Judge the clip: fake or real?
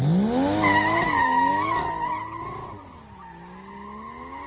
real